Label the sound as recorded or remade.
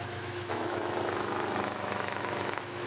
remade